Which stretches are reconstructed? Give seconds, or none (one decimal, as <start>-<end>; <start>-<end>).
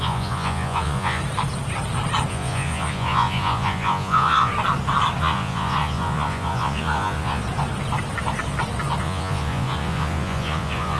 0.0-1.2; 2.3-4.5; 5.2-7.4; 9.0-11.0